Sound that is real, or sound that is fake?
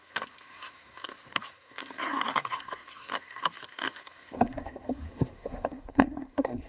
fake